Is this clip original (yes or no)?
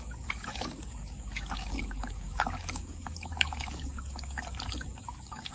no